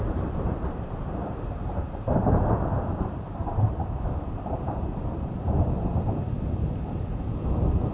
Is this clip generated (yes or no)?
yes